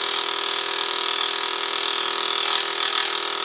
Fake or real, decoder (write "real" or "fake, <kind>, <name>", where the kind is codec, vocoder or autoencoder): real